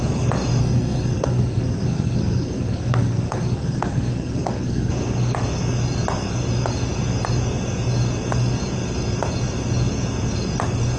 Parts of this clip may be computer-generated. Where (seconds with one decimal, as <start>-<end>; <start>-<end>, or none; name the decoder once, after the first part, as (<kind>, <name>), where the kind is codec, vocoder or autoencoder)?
0.6-4.9 (codec, SNAC)